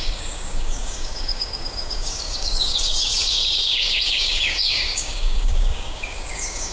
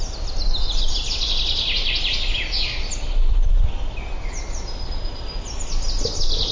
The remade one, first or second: first